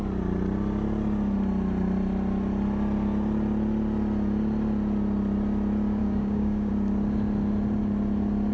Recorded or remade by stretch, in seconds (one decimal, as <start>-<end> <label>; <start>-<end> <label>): 0.0-6.0 recorded; 6.0-6.7 remade; 6.7-8.5 recorded